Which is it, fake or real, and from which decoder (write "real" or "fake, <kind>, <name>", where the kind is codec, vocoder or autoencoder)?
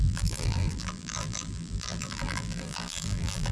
fake, vocoder, BigVGAN v2